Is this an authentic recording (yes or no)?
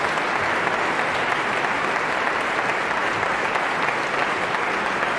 yes